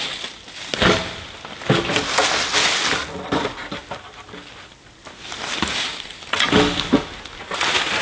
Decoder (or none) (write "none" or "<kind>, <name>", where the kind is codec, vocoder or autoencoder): none